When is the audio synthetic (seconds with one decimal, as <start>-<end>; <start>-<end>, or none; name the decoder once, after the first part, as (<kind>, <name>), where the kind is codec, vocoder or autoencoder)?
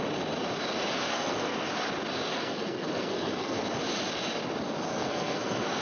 1.1-1.7 (codec, SNAC); 2.3-3.6; 4.9-5.8